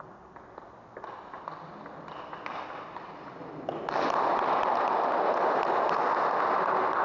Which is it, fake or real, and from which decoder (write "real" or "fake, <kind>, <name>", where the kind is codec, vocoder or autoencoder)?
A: real